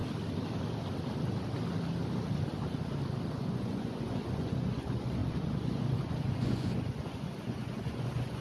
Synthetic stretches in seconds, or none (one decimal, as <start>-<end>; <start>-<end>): 3.3-8.4